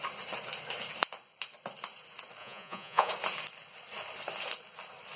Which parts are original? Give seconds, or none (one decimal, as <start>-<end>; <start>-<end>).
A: 0.0-2.4; 3.1-5.2